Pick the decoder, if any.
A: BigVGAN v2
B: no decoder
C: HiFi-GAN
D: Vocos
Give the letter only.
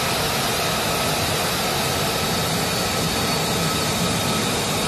B